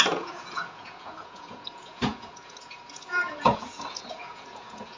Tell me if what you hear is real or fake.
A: fake